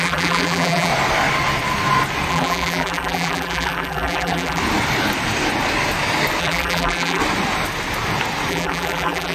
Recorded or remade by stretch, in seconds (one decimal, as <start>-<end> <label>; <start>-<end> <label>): 0.0-0.9 remade; 0.9-2.3 recorded; 2.3-4.6 remade; 4.6-6.4 recorded; 6.4-7.2 remade; 7.2-8.5 recorded; 8.5-9.3 remade